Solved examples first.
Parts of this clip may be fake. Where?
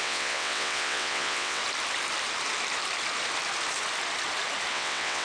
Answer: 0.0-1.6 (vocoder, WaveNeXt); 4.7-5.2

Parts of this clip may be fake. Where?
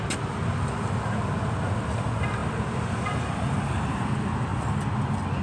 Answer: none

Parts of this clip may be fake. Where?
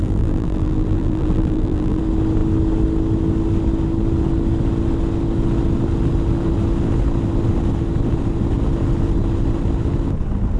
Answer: 0.0-2.0 (vocoder, BigVGAN v2)